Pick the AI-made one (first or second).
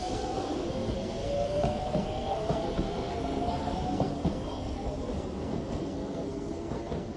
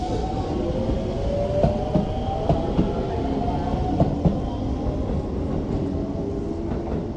first